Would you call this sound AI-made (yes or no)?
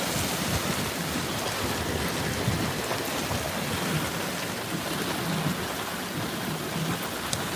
no